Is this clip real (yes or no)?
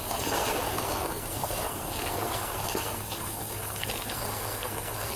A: no